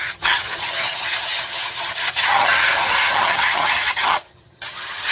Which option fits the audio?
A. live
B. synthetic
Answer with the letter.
B